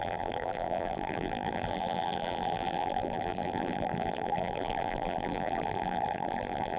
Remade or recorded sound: remade